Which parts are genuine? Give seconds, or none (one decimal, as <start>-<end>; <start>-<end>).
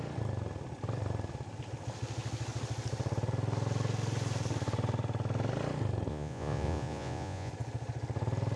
0.0-6.1; 7.5-8.6